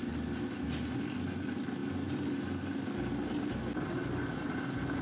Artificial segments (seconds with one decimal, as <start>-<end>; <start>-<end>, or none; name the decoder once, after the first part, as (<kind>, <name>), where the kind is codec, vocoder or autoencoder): none